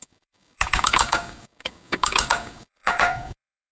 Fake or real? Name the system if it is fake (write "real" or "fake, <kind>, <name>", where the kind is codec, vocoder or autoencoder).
fake, codec, DAC